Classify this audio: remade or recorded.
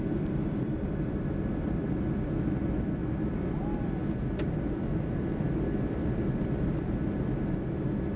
recorded